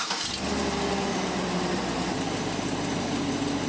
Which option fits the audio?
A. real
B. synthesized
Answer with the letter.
A